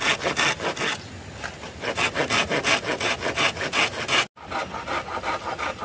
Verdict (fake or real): real